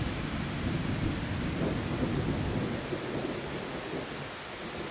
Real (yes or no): yes